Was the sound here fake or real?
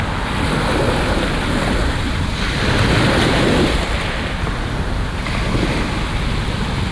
real